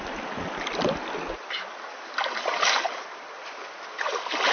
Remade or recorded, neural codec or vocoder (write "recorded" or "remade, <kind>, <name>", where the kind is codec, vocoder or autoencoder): recorded